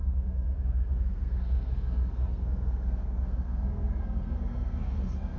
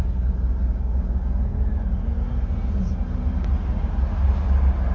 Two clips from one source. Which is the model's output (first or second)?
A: first